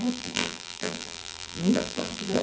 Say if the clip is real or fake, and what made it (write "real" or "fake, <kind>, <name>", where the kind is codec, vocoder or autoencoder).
fake, vocoder, BigVGAN v2